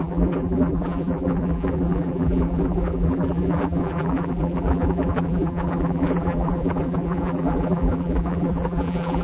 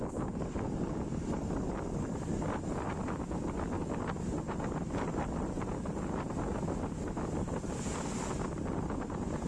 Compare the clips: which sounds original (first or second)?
second